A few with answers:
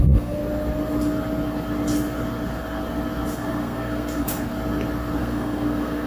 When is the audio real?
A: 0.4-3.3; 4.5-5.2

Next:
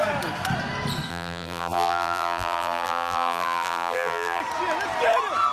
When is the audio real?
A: 0.0-1.1; 4.4-5.5

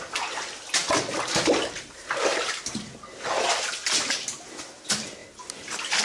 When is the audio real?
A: 0.0-6.0

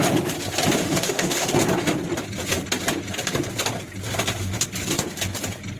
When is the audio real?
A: 0.0-0.8; 1.5-5.8

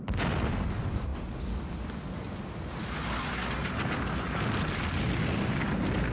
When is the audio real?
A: 0.0-6.1

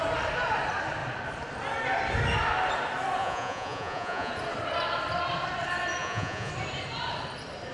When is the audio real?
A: 0.0-3.2; 4.3-6.0; 6.5-7.7

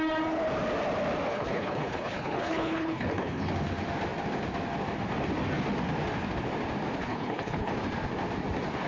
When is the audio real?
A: 0.0-1.3; 3.5-7.0; 7.7-8.9

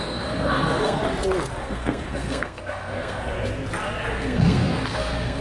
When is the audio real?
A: 1.0-1.6; 3.3-4.1